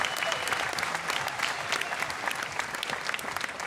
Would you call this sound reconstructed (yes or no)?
no